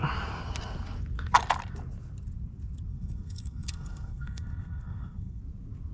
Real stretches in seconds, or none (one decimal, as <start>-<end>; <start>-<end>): 0.0-2.9; 5.4-5.9